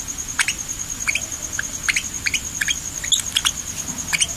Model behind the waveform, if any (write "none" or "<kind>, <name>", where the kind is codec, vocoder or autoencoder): none